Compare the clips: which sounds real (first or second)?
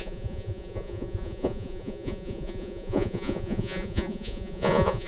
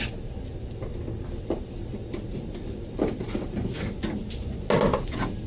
second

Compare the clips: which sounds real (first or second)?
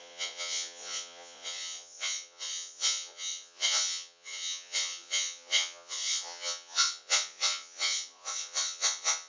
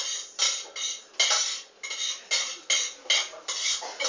second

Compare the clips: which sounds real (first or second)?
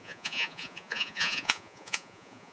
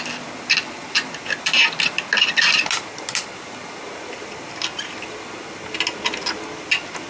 second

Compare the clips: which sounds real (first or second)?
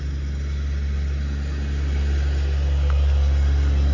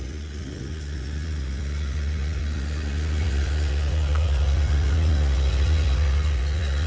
first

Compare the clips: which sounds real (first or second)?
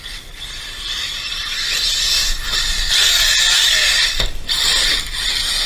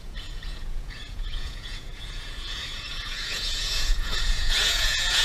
first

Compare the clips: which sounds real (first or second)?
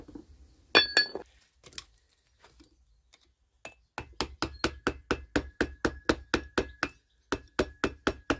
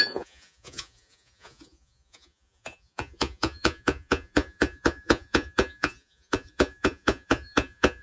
first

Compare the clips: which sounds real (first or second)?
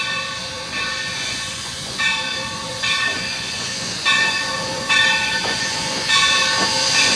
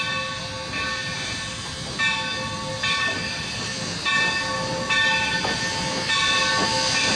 second